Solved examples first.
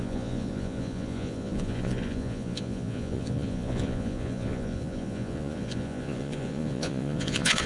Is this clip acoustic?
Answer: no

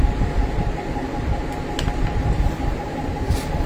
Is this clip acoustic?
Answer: yes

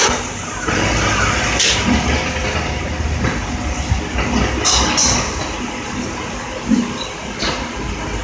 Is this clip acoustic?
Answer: yes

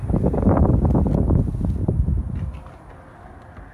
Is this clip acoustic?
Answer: yes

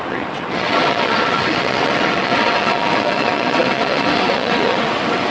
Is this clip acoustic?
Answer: no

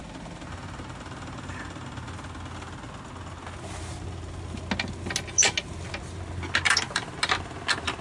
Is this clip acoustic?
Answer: yes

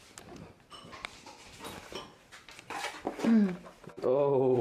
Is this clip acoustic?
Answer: yes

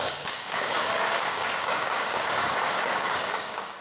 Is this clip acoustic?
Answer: no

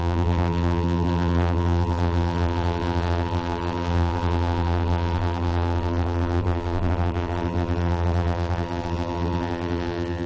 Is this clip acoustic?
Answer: no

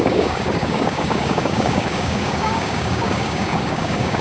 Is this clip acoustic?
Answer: no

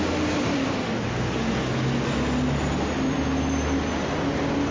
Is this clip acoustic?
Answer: yes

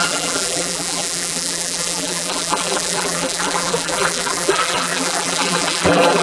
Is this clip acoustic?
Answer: no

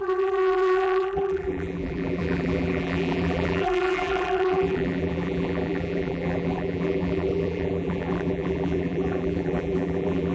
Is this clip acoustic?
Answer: no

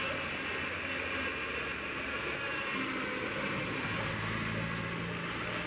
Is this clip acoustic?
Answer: yes